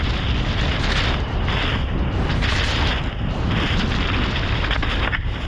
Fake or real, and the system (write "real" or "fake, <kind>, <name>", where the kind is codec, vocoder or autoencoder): real